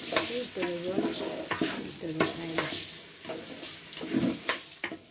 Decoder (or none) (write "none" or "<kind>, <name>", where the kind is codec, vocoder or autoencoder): none